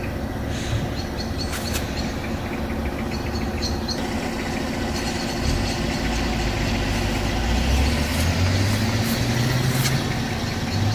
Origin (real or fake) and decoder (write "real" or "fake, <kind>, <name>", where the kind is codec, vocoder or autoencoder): real